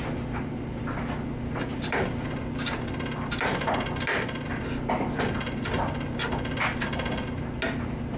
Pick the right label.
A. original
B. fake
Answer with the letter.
A